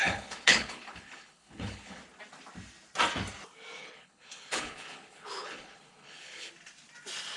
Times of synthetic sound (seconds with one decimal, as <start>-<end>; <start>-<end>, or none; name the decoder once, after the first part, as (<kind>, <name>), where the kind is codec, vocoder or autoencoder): 0.0-2.0 (codec, HILCodec); 3.8-6.5